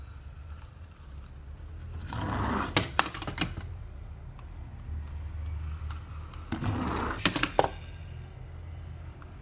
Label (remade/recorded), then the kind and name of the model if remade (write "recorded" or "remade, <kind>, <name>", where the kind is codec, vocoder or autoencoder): recorded